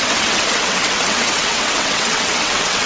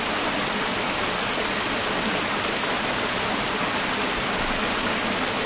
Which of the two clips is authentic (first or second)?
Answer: second